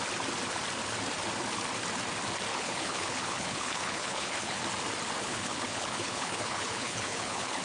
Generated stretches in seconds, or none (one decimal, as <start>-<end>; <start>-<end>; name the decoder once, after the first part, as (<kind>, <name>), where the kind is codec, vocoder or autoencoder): 2.5-4.6 (codec, HILCodec); 5.2-7.6